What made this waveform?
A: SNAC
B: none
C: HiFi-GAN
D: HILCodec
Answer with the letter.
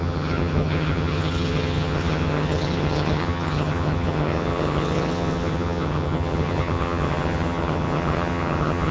C